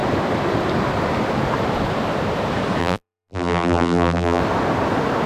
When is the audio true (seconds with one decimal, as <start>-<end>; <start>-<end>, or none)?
0.0-2.8; 4.4-5.3

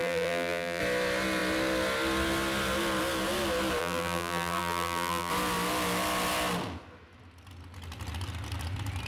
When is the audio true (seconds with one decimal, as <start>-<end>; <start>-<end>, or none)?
0.8-3.8; 5.3-9.1